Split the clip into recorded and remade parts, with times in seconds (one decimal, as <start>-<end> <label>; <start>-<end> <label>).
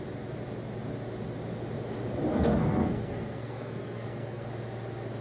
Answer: 0.0-2.3 recorded; 2.3-4.5 remade; 4.5-5.2 recorded